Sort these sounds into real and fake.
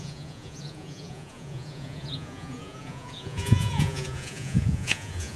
fake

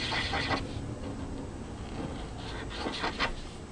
real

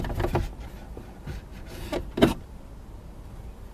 fake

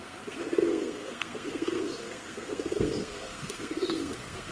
fake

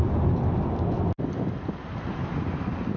real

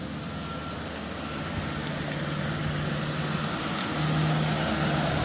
real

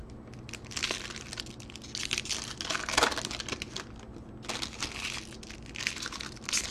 real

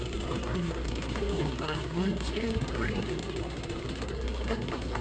fake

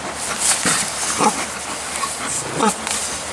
real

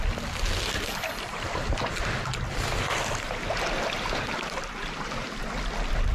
real